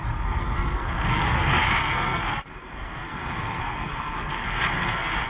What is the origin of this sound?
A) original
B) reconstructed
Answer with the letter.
B